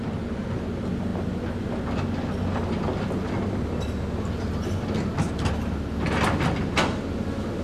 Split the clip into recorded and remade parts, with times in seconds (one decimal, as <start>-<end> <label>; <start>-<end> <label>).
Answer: 0.0-7.6 recorded